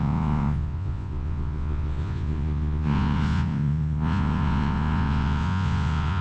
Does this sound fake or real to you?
fake